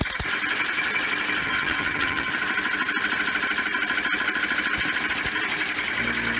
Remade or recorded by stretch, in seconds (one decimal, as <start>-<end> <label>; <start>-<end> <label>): 0.0-1.4 recorded; 1.4-2.3 remade; 2.3-6.4 recorded

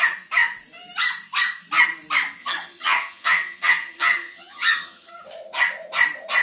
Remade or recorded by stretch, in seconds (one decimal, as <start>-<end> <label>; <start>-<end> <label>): 0.0-2.4 recorded; 2.4-5.1 remade; 5.1-6.4 recorded

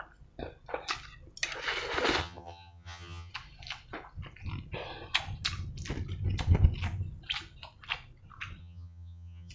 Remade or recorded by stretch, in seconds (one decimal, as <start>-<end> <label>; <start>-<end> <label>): 0.0-2.2 recorded; 2.2-3.3 remade; 3.3-8.6 recorded; 8.6-9.5 remade